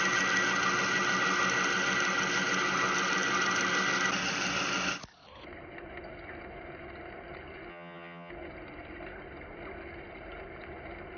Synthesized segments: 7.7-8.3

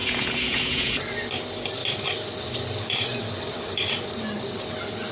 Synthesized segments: 0.0-1.0

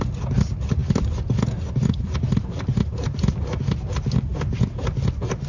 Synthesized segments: none